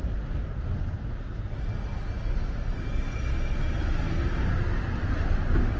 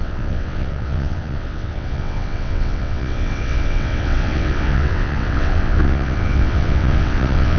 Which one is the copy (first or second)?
second